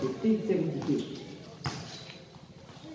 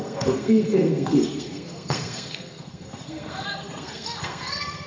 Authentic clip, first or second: first